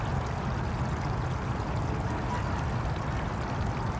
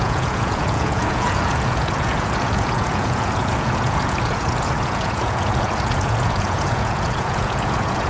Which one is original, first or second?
first